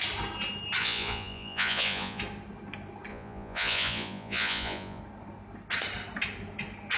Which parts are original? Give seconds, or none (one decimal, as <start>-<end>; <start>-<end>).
0.0-0.8; 2.2-3.1; 5.0-7.0